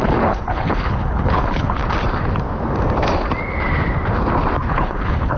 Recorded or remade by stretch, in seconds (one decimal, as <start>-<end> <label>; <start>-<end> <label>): 0.0-1.8 remade; 1.8-4.7 recorded; 4.7-5.4 remade